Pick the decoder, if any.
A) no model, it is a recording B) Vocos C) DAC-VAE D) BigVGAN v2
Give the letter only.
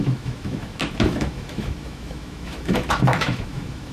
C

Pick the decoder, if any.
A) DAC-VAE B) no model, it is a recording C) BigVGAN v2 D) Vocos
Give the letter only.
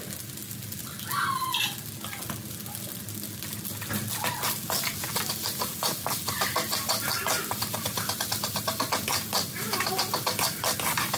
B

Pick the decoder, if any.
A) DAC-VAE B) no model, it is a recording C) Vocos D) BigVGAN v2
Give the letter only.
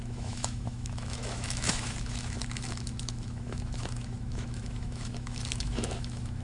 A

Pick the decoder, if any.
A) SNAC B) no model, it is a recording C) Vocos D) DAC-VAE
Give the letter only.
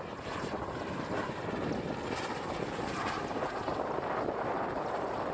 B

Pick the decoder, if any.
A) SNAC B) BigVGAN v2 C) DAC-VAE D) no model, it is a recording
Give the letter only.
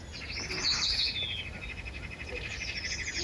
D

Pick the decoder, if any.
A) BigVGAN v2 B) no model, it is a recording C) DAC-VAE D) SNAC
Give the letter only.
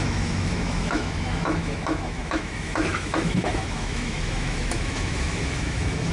C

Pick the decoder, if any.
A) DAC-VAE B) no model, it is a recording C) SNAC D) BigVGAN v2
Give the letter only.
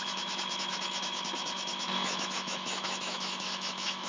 A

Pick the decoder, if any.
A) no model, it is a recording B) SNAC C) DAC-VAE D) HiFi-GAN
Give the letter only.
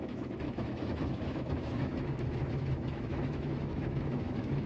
C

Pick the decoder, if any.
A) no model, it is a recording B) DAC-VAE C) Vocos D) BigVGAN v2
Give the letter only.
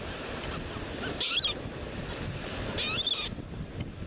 A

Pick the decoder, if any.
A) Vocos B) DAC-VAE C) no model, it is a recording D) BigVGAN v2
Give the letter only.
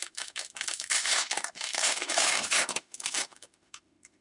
B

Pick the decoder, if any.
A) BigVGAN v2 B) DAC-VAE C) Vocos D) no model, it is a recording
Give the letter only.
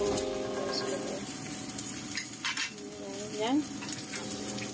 D